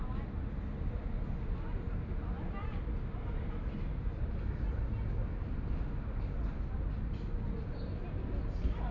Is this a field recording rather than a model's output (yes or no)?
yes